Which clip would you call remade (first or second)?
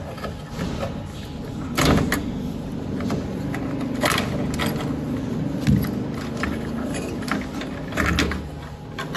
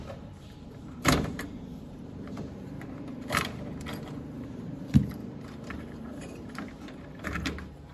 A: second